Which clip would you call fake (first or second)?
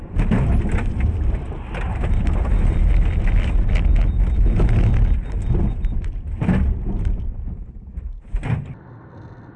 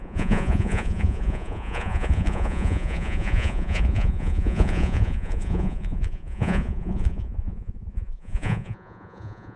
second